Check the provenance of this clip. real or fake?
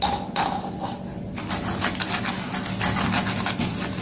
real